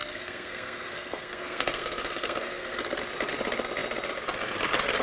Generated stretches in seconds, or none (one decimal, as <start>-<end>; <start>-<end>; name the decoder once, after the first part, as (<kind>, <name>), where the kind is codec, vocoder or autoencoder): 0.0-3.0 (codec, SNAC)